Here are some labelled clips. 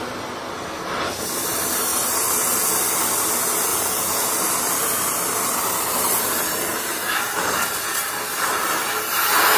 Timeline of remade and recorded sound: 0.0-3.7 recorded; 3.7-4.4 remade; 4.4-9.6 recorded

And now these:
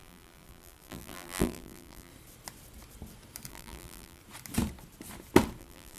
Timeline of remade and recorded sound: 0.0-2.1 remade; 2.1-3.5 recorded; 3.5-4.2 remade; 4.2-5.6 recorded; 5.6-6.0 remade